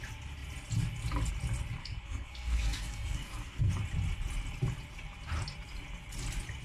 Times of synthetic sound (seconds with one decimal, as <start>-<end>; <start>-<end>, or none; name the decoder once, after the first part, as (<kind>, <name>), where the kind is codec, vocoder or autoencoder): 1.8-3.7 (codec, SNAC)